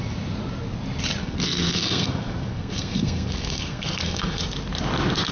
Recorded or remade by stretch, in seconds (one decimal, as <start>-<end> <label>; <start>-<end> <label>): 0.0-1.2 recorded; 1.2-4.4 remade; 4.4-5.3 recorded